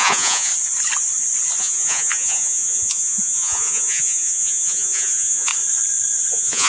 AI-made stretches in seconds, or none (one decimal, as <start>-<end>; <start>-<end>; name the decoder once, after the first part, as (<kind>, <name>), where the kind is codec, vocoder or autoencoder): 0.0-0.5 (vocoder, Vocos); 1.6-5.5; 6.3-6.7